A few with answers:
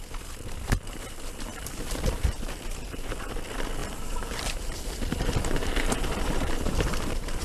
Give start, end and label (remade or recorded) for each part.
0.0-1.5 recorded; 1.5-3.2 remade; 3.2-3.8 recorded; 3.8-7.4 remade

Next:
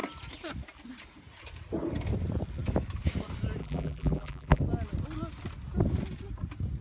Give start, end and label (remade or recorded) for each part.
0.0-3.6 recorded; 3.6-4.6 remade; 4.6-6.8 recorded

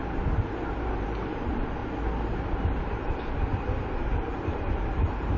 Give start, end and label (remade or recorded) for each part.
0.0-0.9 recorded; 0.9-1.8 remade; 1.8-2.8 recorded; 2.8-5.4 remade